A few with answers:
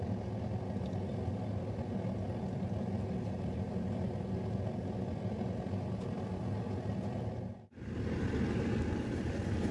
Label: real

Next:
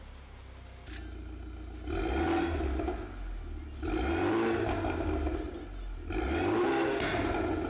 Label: real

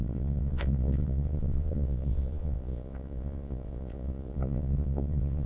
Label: fake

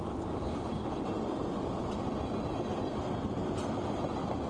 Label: real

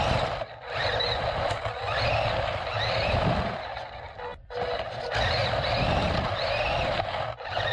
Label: real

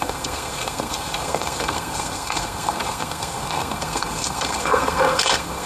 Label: fake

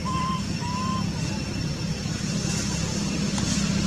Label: real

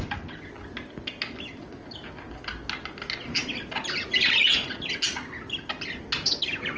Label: real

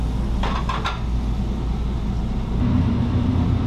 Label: real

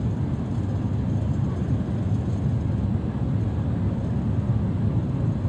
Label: real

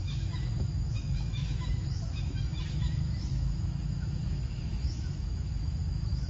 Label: fake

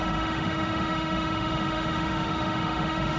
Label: fake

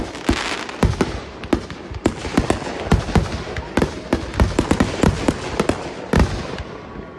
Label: real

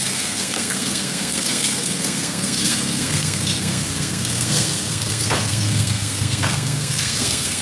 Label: fake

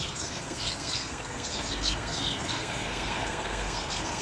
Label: fake